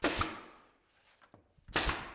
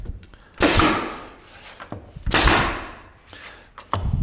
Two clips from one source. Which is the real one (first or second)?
first